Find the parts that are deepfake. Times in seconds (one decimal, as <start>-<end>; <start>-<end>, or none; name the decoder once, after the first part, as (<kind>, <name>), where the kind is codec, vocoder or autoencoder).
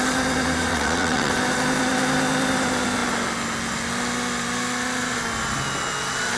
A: 0.7-1.3 (vocoder, WaveNeXt)